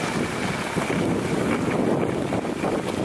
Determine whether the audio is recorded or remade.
recorded